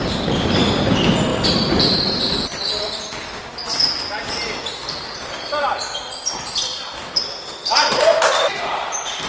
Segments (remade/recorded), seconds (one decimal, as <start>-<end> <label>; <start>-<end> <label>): 0.0-9.3 recorded